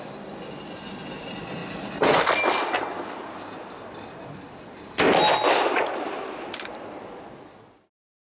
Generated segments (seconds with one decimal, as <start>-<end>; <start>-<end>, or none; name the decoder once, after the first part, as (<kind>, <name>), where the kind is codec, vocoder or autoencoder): none